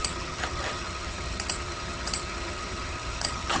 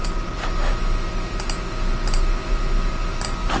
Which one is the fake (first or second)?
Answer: first